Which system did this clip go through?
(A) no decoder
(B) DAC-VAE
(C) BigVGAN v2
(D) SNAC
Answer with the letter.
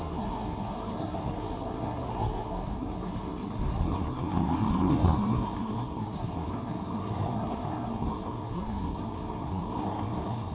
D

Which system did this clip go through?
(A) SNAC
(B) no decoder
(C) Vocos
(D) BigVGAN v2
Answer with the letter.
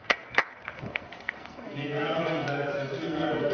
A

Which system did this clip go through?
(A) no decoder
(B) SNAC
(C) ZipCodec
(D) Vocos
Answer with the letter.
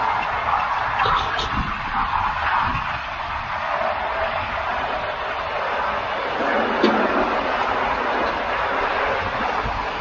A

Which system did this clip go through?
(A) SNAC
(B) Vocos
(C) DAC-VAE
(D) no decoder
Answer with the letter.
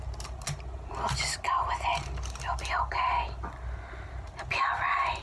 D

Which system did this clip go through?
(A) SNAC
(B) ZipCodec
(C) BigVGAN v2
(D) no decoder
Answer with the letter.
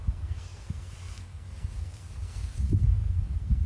A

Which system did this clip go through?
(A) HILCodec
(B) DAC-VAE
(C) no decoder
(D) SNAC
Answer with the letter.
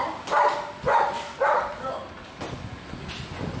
C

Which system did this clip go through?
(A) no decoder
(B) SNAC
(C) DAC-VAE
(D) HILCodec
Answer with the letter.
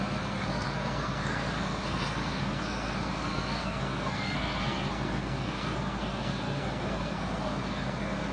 B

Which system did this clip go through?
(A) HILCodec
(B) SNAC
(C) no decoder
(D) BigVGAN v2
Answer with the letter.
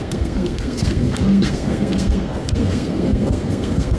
B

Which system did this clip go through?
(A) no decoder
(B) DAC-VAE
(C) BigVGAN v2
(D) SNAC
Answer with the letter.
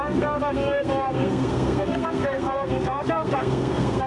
D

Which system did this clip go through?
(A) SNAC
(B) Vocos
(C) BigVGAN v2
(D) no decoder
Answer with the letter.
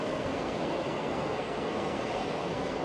A